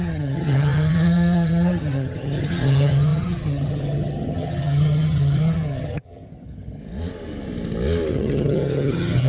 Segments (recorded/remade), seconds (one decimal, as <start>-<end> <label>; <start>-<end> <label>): 0.0-6.8 remade; 6.8-8.1 recorded; 8.1-9.3 remade